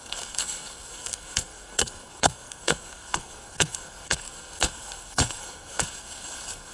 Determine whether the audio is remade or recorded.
remade